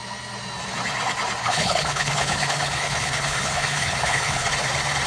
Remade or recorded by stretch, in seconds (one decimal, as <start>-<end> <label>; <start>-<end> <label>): 0.0-1.4 recorded; 1.4-4.5 remade; 4.5-5.1 recorded